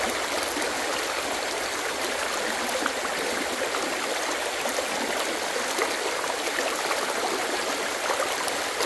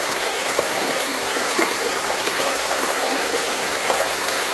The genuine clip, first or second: first